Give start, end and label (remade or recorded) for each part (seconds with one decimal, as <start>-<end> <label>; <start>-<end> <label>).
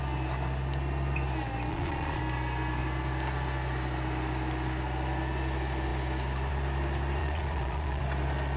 0.0-1.7 recorded; 1.7-2.2 remade; 2.2-7.2 recorded; 7.2-8.0 remade; 8.0-8.6 recorded